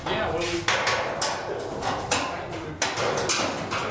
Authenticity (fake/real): real